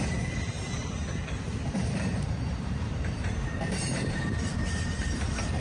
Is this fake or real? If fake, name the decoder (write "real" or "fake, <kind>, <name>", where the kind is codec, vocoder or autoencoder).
fake, vocoder, BigVGAN v2